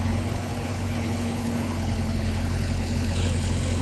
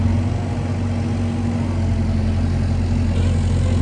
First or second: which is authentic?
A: second